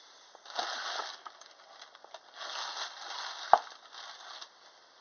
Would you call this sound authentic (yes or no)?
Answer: yes